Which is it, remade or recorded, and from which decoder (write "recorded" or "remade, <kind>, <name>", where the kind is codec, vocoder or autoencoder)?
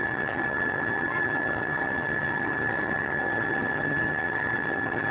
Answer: remade, vocoder, HiFi-GAN